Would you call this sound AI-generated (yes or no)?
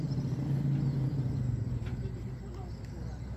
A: no